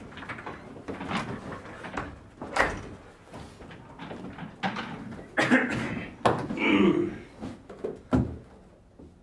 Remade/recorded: recorded